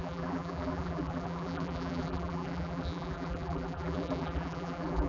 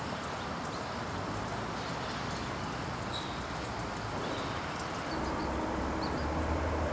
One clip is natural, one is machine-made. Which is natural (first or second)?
second